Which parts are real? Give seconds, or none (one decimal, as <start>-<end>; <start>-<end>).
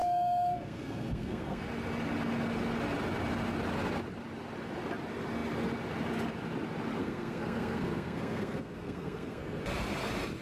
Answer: 1.6-7.0; 9.6-10.4